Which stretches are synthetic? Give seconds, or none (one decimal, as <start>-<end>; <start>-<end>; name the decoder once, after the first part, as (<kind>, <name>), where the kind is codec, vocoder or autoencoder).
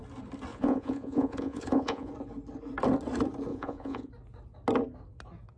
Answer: 0.5-2.1 (vocoder, Vocos); 3.5-4.1